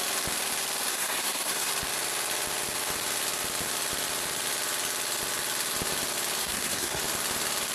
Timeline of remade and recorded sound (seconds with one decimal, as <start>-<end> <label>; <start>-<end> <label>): 0.0-0.9 recorded; 0.9-1.7 remade; 1.7-6.4 recorded; 6.4-7.0 remade; 7.0-7.7 recorded